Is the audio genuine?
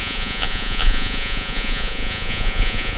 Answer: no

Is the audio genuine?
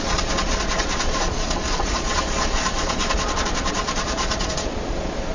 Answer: no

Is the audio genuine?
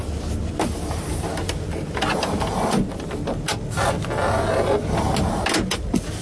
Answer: yes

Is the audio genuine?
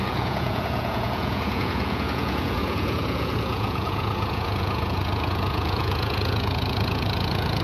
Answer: no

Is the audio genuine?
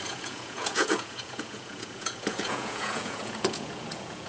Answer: no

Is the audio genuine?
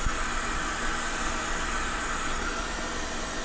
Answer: yes